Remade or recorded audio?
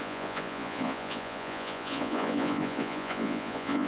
remade